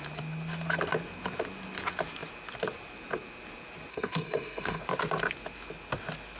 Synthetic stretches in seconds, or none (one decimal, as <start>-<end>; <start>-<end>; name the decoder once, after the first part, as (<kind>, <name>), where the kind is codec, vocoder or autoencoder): 3.9-4.8 (codec, SNAC)

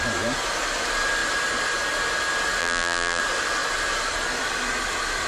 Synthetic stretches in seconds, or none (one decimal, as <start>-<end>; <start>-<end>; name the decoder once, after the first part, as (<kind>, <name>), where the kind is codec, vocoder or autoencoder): 2.6-3.2 (vocoder, BigVGAN v2)

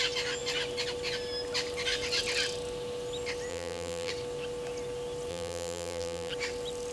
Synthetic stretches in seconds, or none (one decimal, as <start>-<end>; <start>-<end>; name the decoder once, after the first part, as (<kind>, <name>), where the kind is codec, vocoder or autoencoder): 3.5-4.1 (vocoder, BigVGAN v2); 5.3-6.3

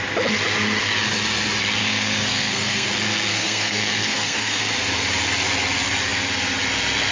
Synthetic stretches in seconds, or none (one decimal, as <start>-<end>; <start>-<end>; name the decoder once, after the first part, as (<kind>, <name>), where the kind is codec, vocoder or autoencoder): 1.8-2.9 (codec, SNAC); 3.3-4.6

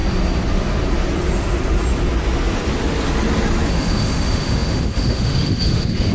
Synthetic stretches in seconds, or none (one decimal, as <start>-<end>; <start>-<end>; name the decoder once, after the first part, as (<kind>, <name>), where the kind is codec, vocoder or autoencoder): 3.7-6.1 (autoencoder, DAC-VAE)

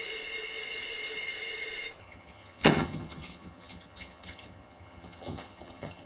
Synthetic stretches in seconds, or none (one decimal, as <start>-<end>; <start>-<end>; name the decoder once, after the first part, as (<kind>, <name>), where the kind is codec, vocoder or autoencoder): 2.0-6.1 (vocoder, HiFi-GAN)

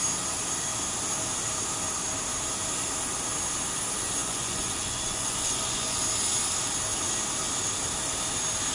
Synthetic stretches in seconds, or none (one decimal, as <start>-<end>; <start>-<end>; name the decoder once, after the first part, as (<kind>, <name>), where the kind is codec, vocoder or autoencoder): 4.2-6.0 (vocoder, Vocos)

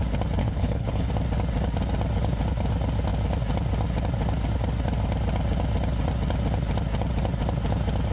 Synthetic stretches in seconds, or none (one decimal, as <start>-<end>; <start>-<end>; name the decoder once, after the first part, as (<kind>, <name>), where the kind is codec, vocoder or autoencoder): 0.4-1.1 (codec, HILCodec)